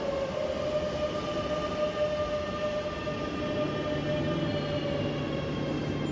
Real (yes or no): yes